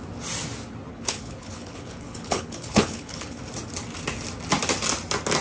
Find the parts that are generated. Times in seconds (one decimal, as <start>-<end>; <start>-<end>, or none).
0.9-3.4